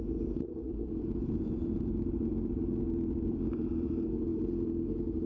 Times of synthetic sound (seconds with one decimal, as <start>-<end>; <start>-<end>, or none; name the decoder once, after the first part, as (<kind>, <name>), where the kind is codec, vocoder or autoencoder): 0.0-5.3 (vocoder, BigVGAN v2)